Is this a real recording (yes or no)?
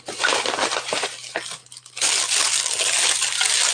yes